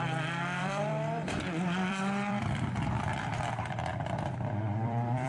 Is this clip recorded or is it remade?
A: remade